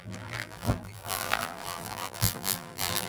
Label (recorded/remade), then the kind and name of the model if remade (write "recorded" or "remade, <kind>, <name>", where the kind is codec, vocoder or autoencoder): remade, vocoder, BigVGAN v2